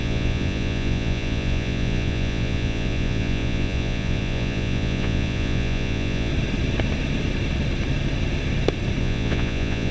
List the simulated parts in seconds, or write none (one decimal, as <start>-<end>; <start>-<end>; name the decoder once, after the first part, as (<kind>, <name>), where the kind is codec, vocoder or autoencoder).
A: 0.0-6.3 (vocoder, Vocos); 9.0-9.9